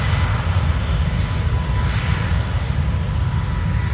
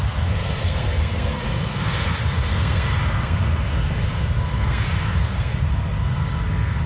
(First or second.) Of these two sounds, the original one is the first